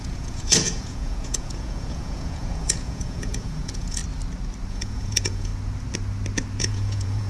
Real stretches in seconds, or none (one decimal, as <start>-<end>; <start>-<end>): 4.0-4.7; 5.5-6.6